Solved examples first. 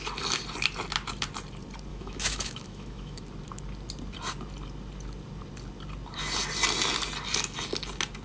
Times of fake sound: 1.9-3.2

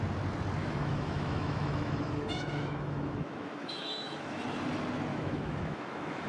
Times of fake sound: 0.6-4.4; 5.1-6.3

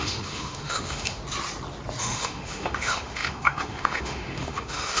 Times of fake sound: 0.0-1.2; 2.0-5.0

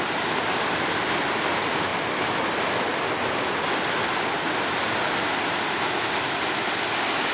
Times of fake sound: none

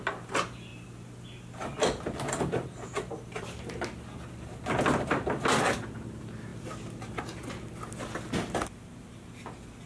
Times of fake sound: none

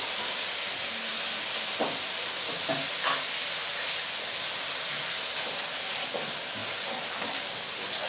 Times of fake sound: none

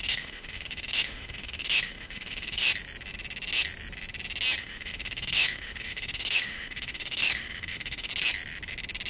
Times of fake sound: 0.0-2.7; 4.6-8.1

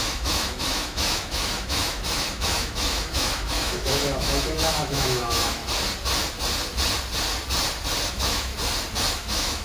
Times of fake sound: 0.0-5.6; 8.1-8.5; 9.1-9.6